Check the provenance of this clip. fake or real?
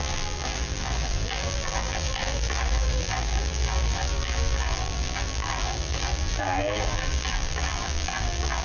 fake